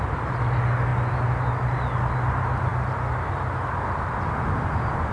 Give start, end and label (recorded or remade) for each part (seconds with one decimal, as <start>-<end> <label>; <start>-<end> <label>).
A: 0.0-5.1 recorded